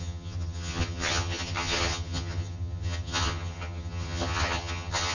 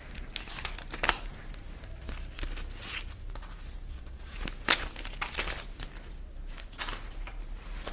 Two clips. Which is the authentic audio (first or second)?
second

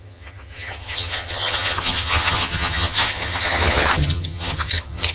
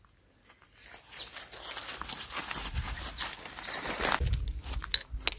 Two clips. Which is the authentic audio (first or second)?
second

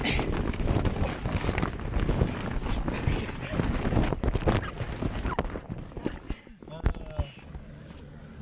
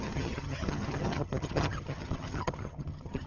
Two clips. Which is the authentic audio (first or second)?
first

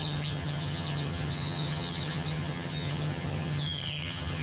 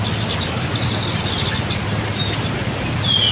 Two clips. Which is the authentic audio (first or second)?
second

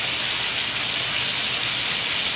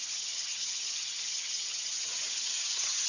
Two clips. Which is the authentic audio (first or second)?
first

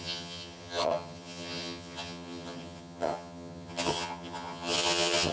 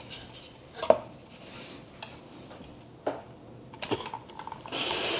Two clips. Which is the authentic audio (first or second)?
second